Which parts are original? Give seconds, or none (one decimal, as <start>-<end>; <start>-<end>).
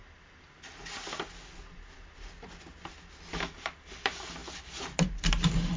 0.0-5.8